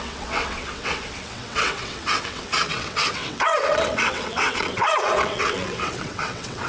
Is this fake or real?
fake